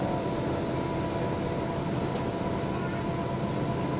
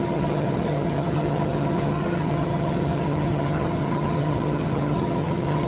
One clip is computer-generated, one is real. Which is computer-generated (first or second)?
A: second